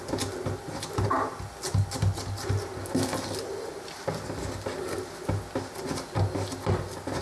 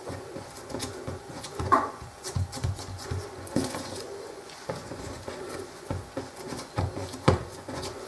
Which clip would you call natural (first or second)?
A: first